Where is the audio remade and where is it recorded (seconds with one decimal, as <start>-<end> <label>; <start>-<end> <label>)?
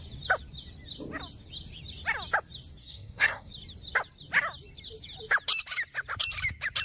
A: 0.0-2.8 recorded; 2.8-3.5 remade; 3.5-6.8 recorded